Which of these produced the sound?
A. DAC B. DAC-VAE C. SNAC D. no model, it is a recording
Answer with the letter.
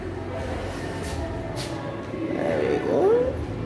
D